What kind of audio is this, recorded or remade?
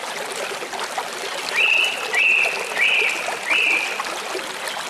recorded